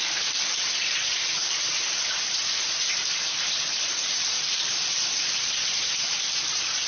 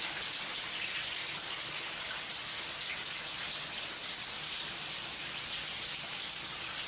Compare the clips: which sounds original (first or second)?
second